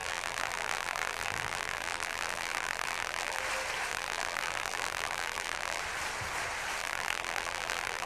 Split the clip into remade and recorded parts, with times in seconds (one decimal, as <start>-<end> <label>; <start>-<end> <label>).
0.0-3.4 remade; 3.4-3.9 recorded; 3.9-5.8 remade; 5.8-6.8 recorded; 6.8-8.1 remade